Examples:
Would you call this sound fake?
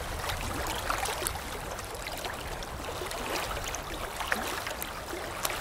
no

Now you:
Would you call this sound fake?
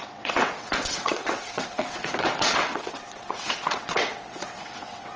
yes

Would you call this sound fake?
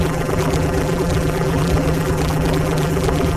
yes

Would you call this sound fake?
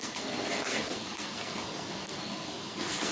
yes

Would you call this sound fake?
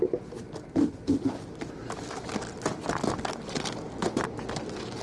no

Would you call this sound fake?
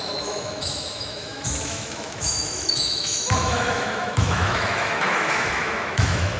yes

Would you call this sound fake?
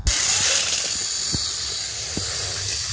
no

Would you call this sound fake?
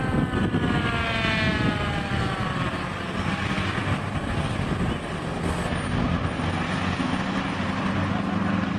no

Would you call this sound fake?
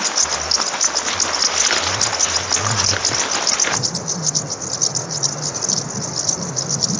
no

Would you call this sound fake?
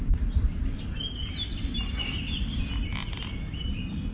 no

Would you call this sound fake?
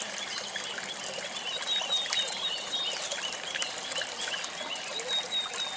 no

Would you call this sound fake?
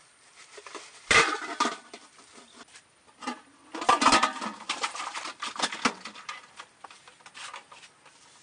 no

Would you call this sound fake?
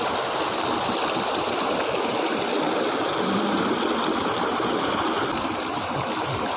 no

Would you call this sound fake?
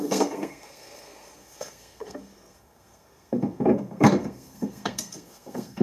yes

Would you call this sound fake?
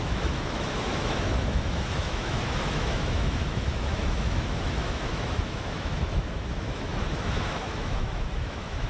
yes